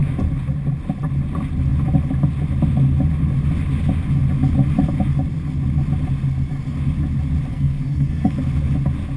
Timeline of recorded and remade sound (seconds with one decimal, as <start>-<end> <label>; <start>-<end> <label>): 0.0-7.5 recorded; 7.5-8.4 remade; 8.4-9.2 recorded